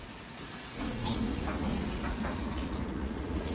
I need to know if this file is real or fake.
fake